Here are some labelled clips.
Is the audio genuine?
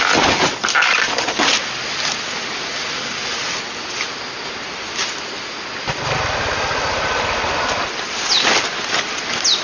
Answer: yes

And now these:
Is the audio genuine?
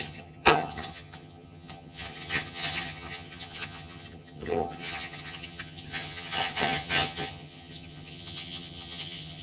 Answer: no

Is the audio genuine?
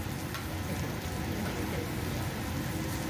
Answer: yes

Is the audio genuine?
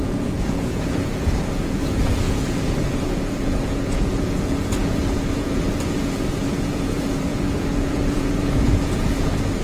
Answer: no